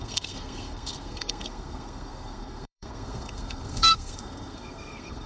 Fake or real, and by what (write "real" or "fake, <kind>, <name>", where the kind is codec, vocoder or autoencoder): fake, codec, SNAC